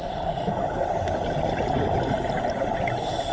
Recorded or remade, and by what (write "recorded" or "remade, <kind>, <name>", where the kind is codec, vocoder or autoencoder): recorded